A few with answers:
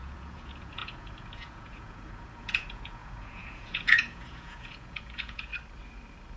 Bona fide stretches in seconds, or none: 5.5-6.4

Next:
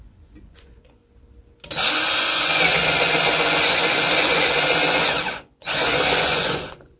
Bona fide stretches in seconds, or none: 1.0-1.9